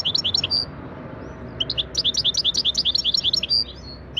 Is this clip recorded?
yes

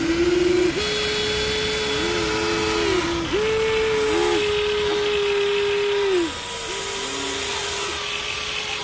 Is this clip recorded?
yes